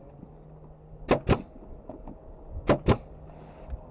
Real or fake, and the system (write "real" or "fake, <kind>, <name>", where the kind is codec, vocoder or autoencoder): real